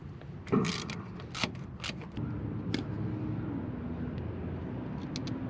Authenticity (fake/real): real